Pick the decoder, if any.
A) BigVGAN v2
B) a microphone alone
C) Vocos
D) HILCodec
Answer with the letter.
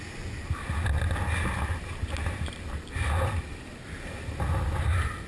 B